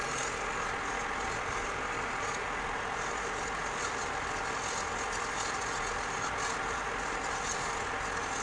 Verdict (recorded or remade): recorded